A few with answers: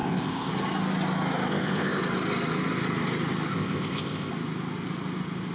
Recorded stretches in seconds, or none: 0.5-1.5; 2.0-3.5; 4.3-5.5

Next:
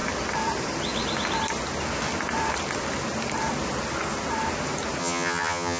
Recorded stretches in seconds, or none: 0.0-5.0

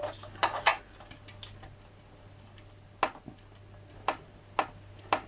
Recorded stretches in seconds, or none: 0.0-5.3

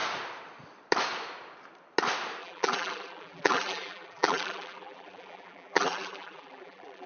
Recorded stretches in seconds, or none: 0.0-2.4

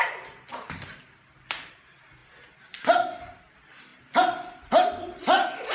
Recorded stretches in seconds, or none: 0.0-5.7

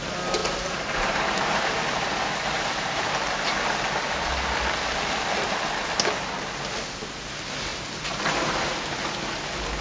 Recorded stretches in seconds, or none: 0.0-0.4; 3.5-7.7; 8.7-9.8

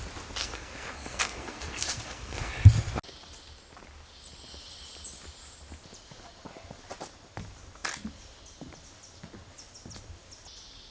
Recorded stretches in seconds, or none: 0.0-0.4; 2.5-10.9

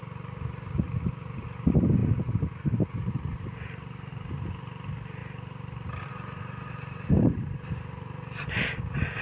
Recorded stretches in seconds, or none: 0.0-9.2